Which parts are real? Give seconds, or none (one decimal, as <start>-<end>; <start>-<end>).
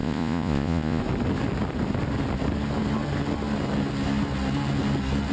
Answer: 1.0-5.3